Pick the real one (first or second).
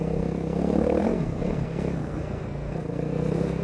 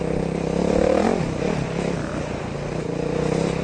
second